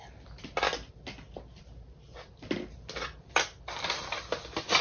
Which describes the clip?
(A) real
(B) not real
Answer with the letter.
A